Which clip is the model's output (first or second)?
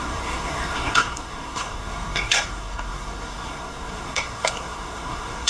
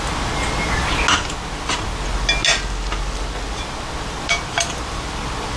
first